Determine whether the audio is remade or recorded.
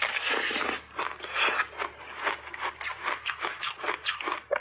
recorded